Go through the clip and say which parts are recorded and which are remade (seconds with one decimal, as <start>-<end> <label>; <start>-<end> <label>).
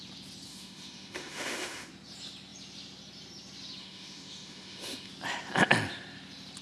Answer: 0.0-0.5 recorded; 0.5-1.9 remade; 1.9-3.8 recorded; 3.8-5.1 remade; 5.1-6.6 recorded